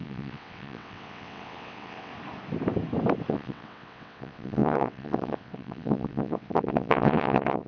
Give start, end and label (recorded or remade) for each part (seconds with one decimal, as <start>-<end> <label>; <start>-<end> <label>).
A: 0.0-2.1 remade; 2.1-3.3 recorded; 3.3-7.7 remade